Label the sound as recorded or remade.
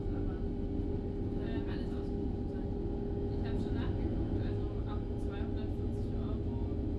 recorded